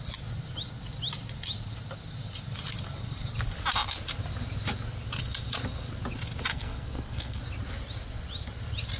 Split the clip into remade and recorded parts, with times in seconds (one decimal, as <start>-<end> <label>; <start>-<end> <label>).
0.0-6.5 recorded; 6.5-7.4 remade; 7.4-9.0 recorded